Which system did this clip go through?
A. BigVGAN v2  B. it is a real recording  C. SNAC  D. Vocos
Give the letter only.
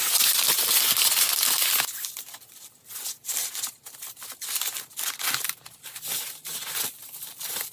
B